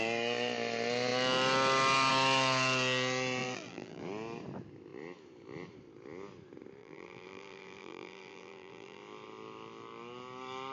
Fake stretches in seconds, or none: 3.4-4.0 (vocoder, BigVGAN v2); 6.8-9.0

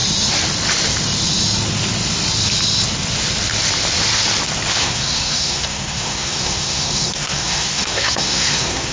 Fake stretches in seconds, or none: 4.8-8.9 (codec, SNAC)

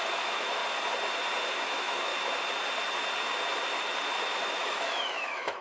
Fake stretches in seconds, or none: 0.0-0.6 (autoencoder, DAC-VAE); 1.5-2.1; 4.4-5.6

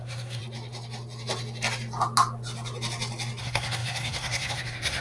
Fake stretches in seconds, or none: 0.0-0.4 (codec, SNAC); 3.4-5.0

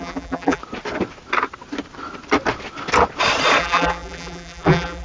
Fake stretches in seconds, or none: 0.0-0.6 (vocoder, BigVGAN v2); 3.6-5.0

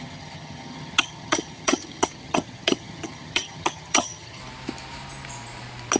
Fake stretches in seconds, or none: 0.0-4.4 (vocoder, HiFi-GAN)

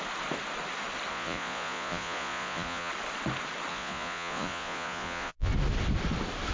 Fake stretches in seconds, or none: 1.1-2.9 (vocoder, Vocos); 3.7-5.5

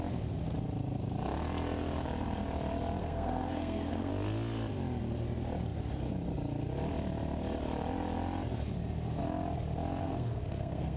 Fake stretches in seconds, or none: 3.0-4.1 (codec, SNAC); 10.0-11.0